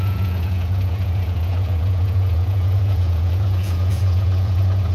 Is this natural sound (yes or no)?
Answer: no